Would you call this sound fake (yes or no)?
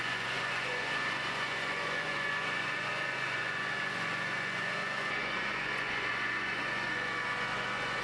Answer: yes